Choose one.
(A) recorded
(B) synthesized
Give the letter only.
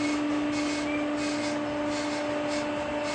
A